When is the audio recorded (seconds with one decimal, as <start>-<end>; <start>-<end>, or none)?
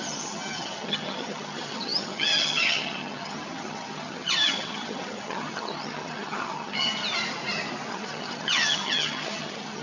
7.0-7.9